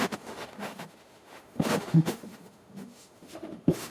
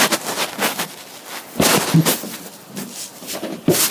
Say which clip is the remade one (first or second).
first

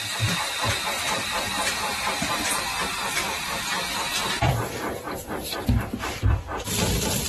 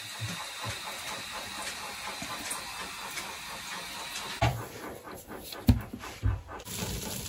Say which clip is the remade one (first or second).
first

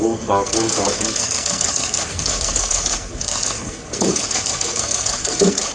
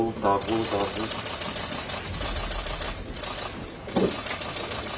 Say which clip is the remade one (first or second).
first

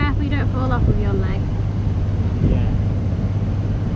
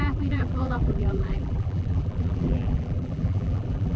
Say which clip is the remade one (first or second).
second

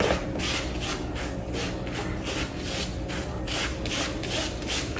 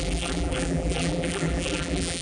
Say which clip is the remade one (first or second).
second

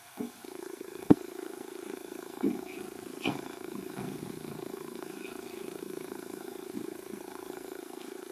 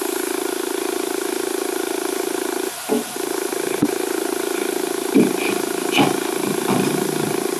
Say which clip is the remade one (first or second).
first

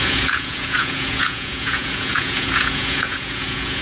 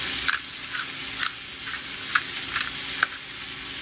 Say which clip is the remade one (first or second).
first